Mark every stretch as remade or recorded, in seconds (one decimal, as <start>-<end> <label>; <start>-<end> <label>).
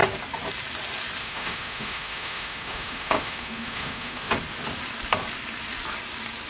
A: 0.0-1.2 recorded; 1.2-4.3 remade; 4.3-6.5 recorded